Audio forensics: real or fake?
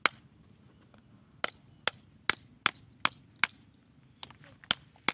real